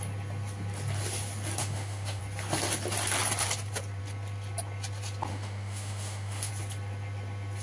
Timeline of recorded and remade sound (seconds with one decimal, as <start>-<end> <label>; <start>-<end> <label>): 0.0-1.6 recorded; 1.6-2.2 remade; 2.2-5.3 recorded; 5.3-6.5 remade; 6.5-7.6 recorded